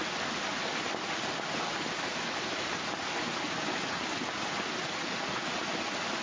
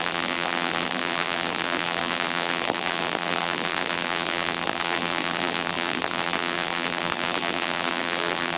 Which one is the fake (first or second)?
second